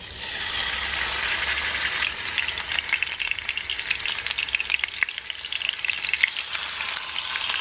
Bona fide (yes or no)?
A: yes